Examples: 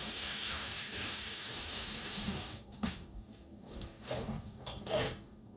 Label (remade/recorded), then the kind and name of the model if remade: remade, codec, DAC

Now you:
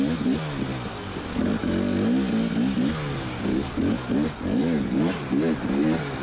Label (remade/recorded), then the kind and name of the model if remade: recorded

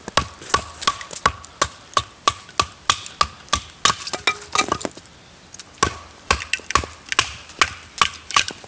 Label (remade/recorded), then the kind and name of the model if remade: recorded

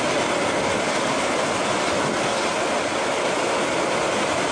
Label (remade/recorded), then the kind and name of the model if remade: recorded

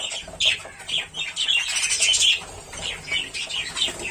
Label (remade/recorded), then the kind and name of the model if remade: recorded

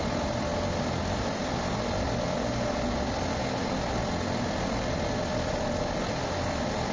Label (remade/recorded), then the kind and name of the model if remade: recorded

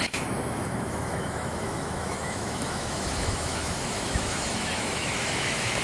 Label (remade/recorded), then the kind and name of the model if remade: remade, autoencoder, DAC-VAE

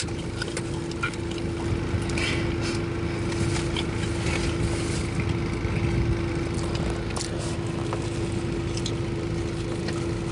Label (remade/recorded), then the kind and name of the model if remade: recorded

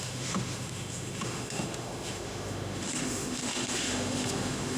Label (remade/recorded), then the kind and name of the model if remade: remade, autoencoder, DAC-VAE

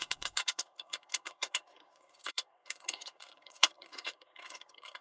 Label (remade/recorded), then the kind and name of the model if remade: remade, codec, SNAC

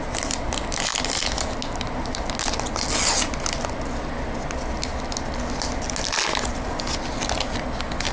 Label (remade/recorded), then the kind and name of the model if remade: recorded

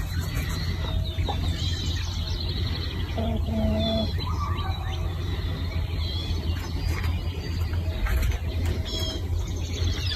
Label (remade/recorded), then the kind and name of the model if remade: recorded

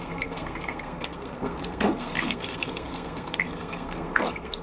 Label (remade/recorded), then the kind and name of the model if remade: remade, codec, SNAC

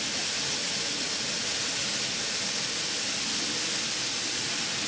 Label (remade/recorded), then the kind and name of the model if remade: recorded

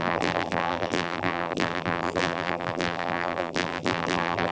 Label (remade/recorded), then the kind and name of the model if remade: remade, vocoder, BigVGAN v2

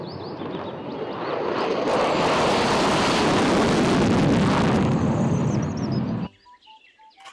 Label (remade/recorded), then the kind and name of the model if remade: recorded